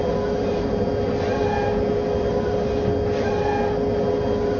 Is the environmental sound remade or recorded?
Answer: recorded